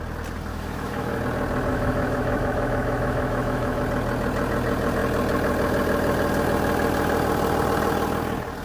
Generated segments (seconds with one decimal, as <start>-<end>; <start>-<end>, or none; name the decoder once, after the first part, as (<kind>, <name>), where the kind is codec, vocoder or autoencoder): 0.5-1.2 (autoencoder, DAC-VAE); 1.7-3.8